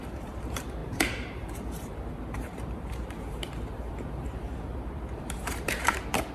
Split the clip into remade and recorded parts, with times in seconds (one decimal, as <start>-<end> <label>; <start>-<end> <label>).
0.0-6.3 remade